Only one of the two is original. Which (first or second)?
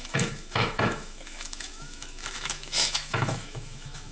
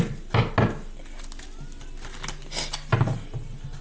second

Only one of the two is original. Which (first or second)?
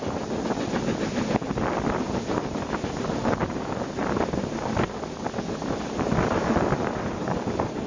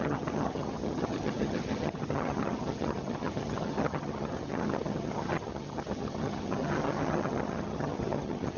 first